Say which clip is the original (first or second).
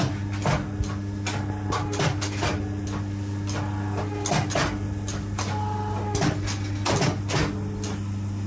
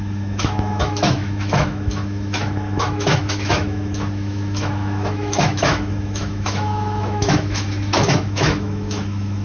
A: first